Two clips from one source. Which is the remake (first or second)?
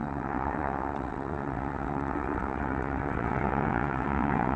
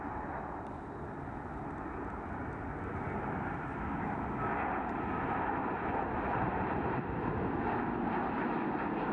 first